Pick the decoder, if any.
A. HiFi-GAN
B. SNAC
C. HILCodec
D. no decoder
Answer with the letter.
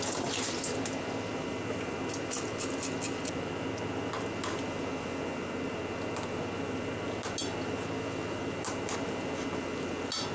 D